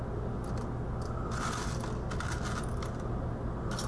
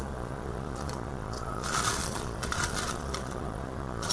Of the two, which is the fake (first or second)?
second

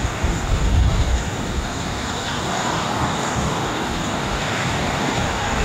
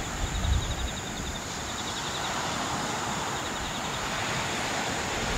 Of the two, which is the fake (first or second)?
first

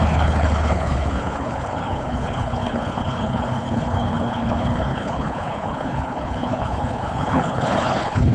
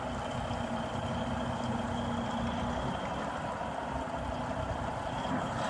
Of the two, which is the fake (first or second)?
first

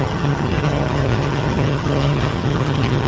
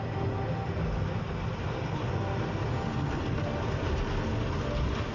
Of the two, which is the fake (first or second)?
first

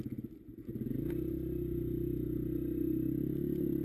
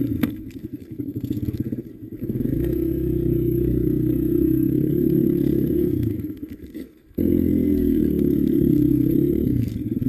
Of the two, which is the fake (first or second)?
second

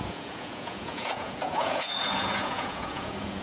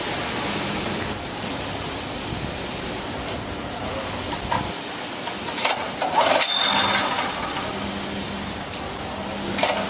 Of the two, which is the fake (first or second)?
first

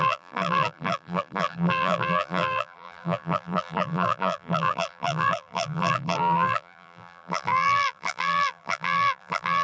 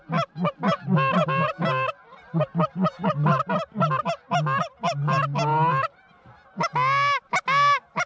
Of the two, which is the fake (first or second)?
first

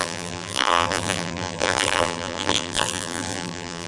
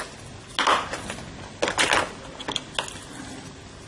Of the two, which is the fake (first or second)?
first